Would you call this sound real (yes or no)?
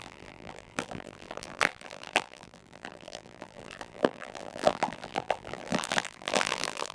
no